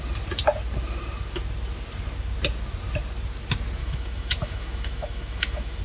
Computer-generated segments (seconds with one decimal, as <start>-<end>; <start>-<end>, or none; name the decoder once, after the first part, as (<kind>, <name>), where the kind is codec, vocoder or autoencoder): 3.8-5.8 (autoencoder, DAC-VAE)